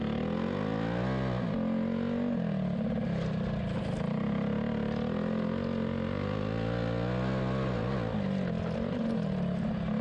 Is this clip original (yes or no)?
yes